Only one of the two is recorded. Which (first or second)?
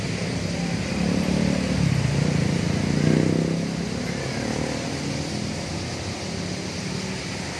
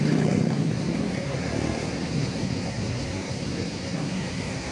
first